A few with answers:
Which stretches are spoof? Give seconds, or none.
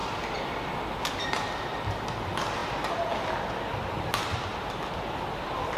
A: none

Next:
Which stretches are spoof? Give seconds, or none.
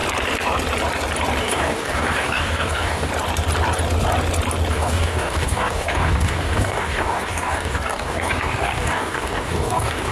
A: 1.4-3.1 (codec, DAC); 4.7-10.1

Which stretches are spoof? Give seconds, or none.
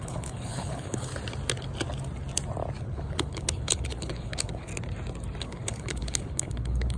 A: 0.0-1.1 (codec, HILCodec); 2.8-4.7; 5.4-7.0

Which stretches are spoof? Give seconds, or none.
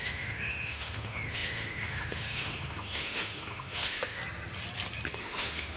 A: 0.0-4.2 (autoencoder, DAC-VAE); 5.2-5.8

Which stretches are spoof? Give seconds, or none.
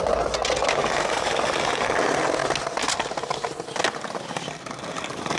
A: 0.8-1.3 (vocoder, BigVGAN v2)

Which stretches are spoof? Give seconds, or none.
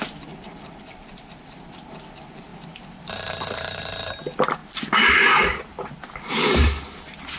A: 2.5-4.1 (vocoder, BigVGAN v2); 4.6-6.3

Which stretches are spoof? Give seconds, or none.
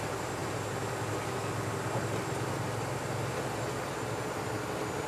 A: none